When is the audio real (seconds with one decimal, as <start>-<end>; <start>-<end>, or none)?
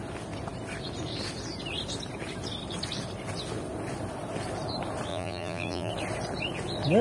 0.0-5.1; 5.9-7.0